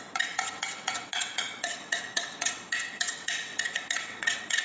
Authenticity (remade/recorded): remade